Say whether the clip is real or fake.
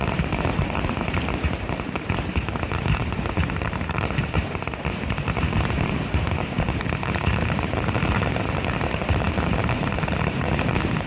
fake